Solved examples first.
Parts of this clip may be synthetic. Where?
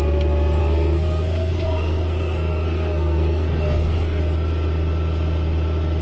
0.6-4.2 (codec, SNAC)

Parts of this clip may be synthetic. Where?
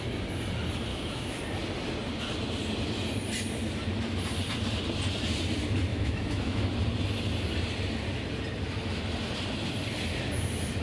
0.9-1.4 (autoencoder, DAC-VAE); 5.9-6.7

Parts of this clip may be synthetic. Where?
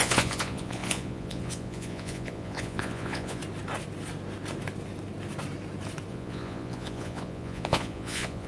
0.0-3.4 (vocoder, Vocos); 6.1-8.5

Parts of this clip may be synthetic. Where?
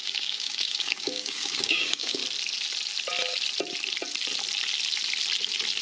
0.0-2.2 (codec, DAC)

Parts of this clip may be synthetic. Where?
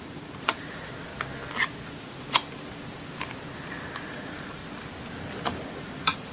0.0-1.1 (vocoder, Vocos); 1.9-2.4; 4.0-4.6; 5.7-6.3